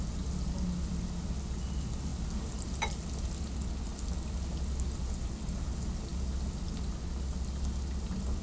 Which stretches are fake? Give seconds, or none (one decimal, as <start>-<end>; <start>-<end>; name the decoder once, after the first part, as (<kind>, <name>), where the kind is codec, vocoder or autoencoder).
none